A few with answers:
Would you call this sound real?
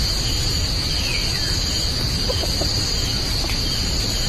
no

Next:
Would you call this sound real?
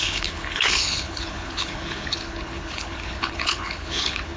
no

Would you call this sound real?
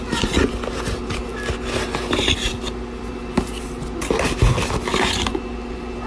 yes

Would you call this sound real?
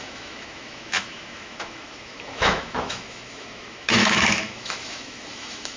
no